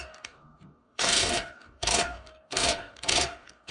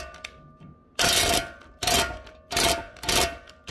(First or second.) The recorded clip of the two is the second